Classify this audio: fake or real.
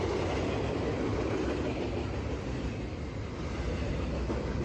real